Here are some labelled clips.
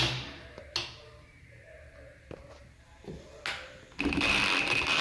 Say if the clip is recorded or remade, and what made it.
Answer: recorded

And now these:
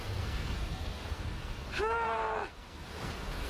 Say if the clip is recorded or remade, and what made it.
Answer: remade, codec, SNAC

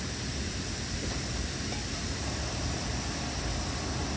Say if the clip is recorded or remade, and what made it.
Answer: recorded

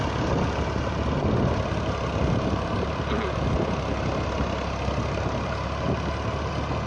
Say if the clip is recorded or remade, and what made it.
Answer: recorded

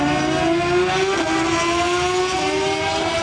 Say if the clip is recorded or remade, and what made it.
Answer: recorded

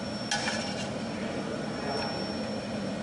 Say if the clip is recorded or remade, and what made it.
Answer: recorded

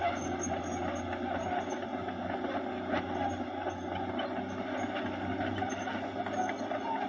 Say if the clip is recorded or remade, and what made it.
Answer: recorded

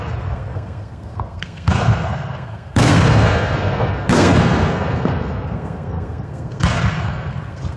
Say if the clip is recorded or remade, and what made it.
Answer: remade, codec, SNAC